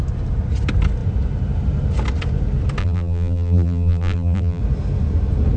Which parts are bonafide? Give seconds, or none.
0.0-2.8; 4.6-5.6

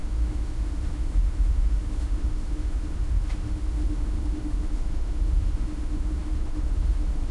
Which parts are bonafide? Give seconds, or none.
none

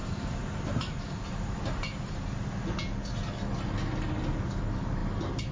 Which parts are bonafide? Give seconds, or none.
2.4-5.5

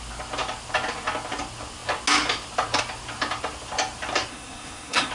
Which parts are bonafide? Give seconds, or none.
0.0-4.3

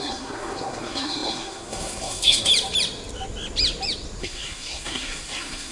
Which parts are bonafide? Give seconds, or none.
2.5-4.2

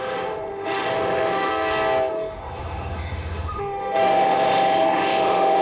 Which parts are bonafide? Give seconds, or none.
1.5-2.1